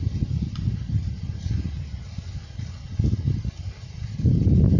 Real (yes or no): yes